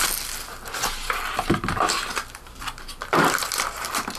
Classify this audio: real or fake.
real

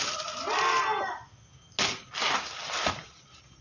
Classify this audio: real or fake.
real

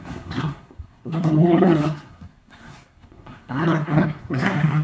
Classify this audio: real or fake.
fake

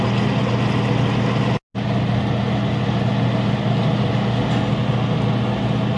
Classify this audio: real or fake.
real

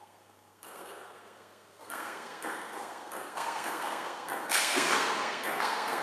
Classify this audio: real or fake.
fake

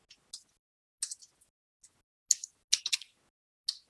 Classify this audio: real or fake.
real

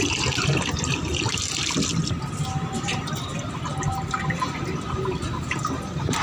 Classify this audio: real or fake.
real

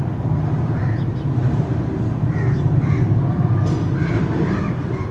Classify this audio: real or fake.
real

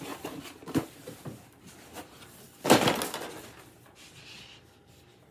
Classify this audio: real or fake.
real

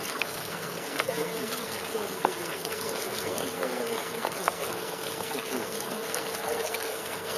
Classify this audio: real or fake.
fake